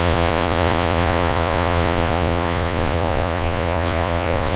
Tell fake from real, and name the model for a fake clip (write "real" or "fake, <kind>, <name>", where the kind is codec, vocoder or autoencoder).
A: fake, vocoder, Vocos